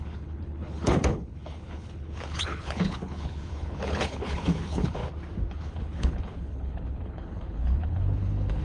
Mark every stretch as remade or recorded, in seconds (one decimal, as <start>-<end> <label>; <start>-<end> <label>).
0.0-5.0 remade; 5.0-5.5 recorded; 5.5-8.6 remade

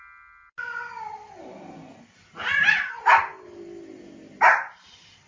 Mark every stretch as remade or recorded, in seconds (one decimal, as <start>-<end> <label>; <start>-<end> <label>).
0.0-4.5 recorded; 4.5-5.3 remade

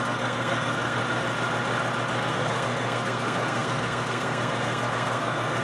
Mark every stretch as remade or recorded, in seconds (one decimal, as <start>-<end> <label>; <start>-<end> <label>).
0.0-1.0 remade; 1.0-2.3 recorded; 2.3-5.6 remade

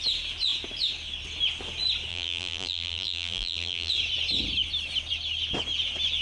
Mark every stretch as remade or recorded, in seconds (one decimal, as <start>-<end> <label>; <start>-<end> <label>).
0.0-2.1 recorded; 2.1-3.9 remade; 3.9-6.2 recorded

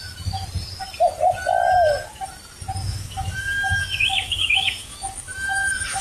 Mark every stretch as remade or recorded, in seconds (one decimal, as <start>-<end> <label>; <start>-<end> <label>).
0.0-2.8 recorded; 2.8-6.0 remade

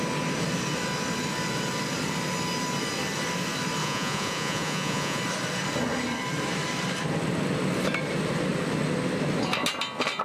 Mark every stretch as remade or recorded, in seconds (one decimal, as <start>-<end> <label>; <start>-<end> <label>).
0.0-3.8 recorded; 3.8-5.2 remade; 5.2-10.2 recorded

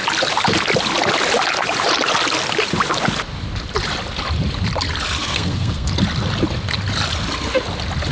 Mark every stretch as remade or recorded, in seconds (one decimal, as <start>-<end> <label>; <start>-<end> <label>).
0.0-5.2 recorded; 5.2-5.9 remade; 5.9-8.1 recorded

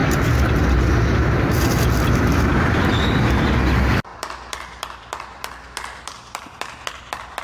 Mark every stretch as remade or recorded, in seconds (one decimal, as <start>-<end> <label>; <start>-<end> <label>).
0.0-4.1 recorded; 4.1-7.4 remade